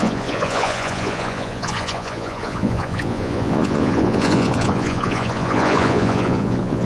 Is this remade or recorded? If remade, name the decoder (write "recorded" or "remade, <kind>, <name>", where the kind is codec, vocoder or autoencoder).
remade, vocoder, Vocos